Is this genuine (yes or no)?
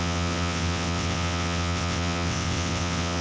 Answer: no